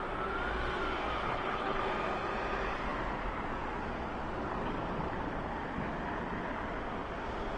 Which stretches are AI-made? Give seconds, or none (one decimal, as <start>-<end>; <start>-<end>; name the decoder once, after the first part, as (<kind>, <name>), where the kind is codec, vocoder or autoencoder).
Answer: 1.2-1.8 (codec, HILCodec)